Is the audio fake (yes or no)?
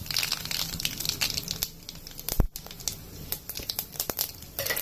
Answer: no